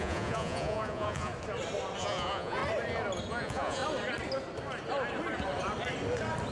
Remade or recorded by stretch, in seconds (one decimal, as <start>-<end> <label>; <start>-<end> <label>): 0.0-1.3 remade; 1.3-2.0 recorded; 2.0-2.6 remade; 2.6-3.3 recorded; 3.3-3.8 remade; 3.8-6.5 recorded